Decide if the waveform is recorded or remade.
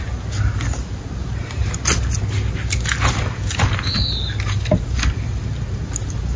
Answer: recorded